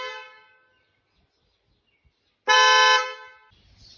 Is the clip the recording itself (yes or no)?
yes